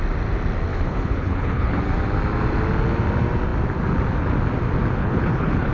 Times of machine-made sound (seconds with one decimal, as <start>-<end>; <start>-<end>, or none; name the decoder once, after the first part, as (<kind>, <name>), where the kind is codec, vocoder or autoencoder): 0.7-1.8 (codec, HILCodec); 5.0-5.7